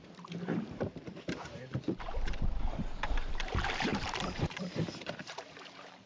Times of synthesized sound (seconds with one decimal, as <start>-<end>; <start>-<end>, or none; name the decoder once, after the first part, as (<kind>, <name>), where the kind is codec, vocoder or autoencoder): 0.0-6.1 (vocoder, BigVGAN v2)